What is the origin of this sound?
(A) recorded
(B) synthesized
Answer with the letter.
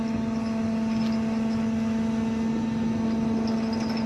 A